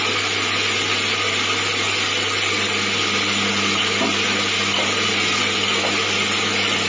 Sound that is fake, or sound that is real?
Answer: real